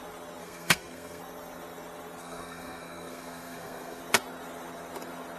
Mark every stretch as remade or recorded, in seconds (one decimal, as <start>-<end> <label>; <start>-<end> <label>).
0.0-0.4 recorded; 0.4-1.2 remade; 1.2-2.2 recorded; 2.2-4.0 remade; 4.0-5.4 recorded